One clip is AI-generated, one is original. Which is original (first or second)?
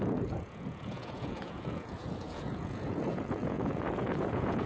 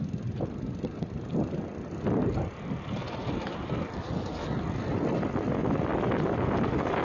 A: second